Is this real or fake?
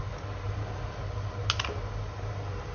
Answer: real